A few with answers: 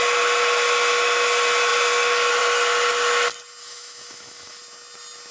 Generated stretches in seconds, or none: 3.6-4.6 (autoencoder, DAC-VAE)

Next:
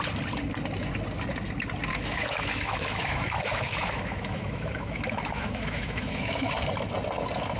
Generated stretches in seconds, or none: 1.9-6.5 (autoencoder, DAC-VAE)

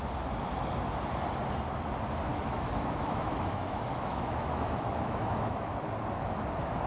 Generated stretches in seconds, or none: 2.3-5.7 (autoencoder, DAC-VAE)

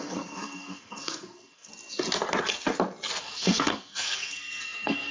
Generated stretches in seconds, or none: 0.0-1.7 (codec, SNAC); 3.2-5.1

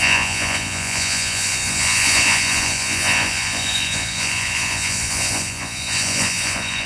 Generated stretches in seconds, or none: 0.0-6.9 (vocoder, Vocos)

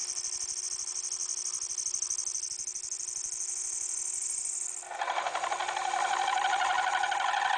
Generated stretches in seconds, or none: none